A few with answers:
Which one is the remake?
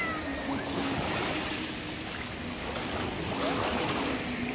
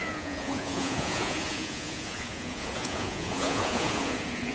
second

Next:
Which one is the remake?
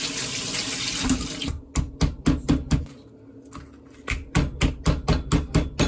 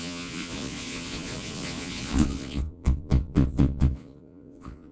second